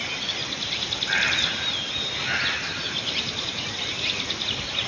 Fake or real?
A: real